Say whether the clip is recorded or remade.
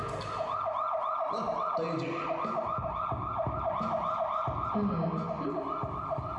recorded